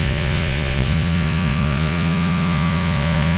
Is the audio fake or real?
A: fake